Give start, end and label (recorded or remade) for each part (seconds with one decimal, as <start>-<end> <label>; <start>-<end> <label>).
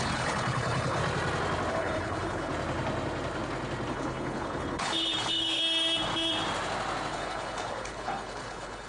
0.0-1.0 remade; 1.0-1.7 recorded; 1.7-2.5 remade; 2.5-3.9 recorded; 3.9-5.6 remade; 5.6-7.1 recorded; 7.1-8.9 remade